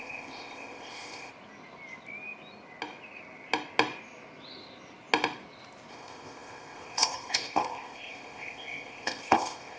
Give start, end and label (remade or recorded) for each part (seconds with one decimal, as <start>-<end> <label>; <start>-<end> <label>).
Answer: 0.0-1.3 remade; 1.3-5.9 recorded; 5.9-9.8 remade